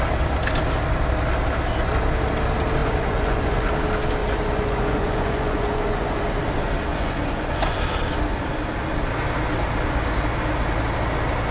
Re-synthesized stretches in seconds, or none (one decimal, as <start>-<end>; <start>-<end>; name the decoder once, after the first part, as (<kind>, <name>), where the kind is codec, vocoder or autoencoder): 2.8-3.7 (vocoder, Vocos); 4.2-6.2; 6.9-7.8